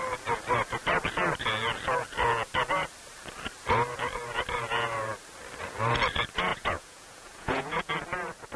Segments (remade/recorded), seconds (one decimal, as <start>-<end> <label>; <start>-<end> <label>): 0.0-6.5 recorded; 6.5-7.9 remade; 7.9-8.6 recorded